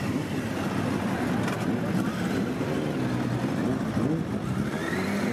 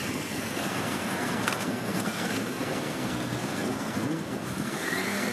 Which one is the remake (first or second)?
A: second